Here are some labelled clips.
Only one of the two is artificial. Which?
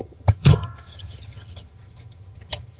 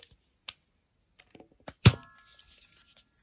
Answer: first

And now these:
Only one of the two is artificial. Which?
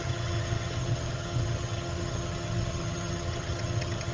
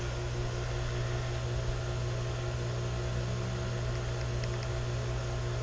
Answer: first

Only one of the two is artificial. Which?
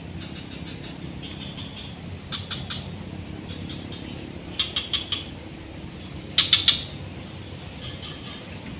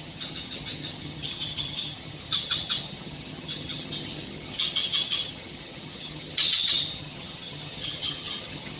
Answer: second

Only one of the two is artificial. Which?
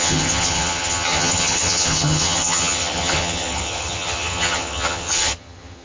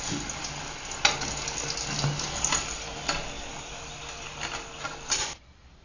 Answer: first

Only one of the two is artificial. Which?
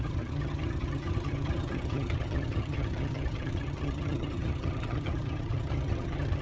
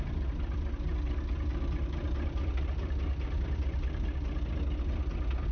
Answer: first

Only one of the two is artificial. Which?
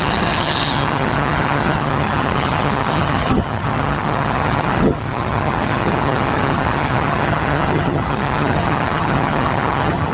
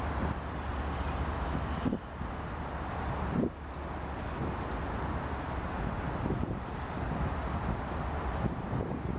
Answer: first